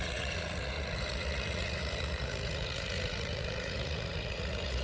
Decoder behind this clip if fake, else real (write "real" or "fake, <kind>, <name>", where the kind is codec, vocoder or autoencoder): fake, vocoder, Vocos